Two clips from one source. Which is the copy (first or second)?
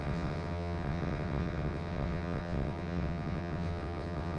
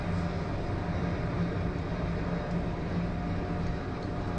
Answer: first